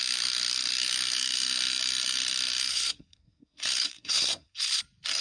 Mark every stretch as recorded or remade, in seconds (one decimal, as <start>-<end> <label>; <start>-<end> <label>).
0.0-2.7 recorded; 2.7-4.8 remade; 4.8-5.2 recorded